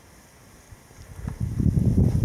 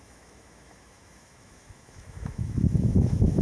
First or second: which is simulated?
second